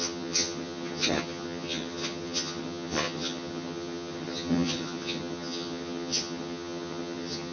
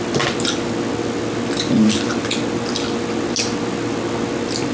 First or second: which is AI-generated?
first